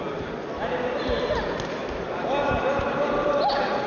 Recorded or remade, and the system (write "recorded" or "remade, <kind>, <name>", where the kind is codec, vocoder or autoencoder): recorded